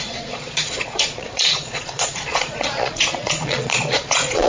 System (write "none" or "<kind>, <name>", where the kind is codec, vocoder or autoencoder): vocoder, Vocos